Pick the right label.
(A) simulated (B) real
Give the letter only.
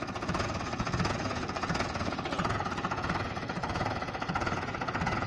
A